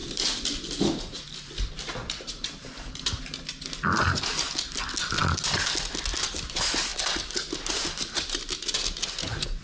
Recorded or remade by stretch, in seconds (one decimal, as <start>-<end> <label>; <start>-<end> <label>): 0.0-3.2 remade; 3.2-9.6 recorded